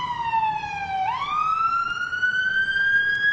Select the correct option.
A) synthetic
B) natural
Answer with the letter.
B